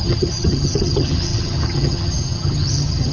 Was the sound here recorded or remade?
remade